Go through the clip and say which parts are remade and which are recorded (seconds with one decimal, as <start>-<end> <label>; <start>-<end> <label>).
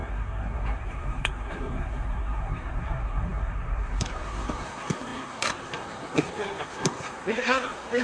0.0-8.0 remade